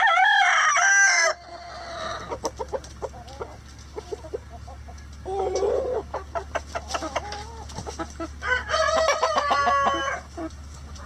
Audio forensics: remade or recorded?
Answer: recorded